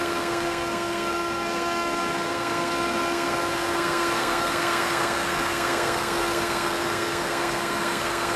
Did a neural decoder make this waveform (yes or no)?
yes